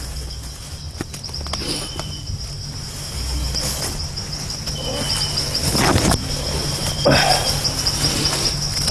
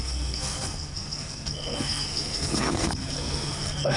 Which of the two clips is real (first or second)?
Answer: first